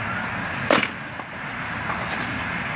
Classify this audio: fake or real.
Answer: real